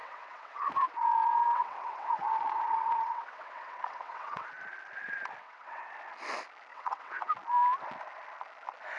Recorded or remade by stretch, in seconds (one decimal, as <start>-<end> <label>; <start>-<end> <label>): 0.0-4.5 remade; 4.5-5.4 recorded; 5.4-5.9 remade; 5.9-6.7 recorded; 6.7-7.3 remade; 7.3-9.0 recorded